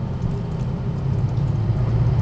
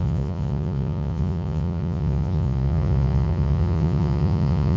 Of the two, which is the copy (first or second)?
second